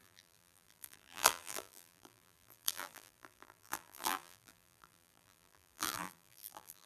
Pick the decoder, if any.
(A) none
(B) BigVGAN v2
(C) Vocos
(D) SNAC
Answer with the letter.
B